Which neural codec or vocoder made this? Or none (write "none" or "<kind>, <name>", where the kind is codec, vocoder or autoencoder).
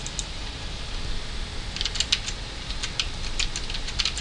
none